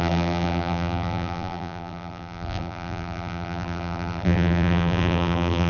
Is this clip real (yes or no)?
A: no